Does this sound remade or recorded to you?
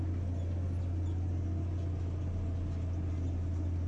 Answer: recorded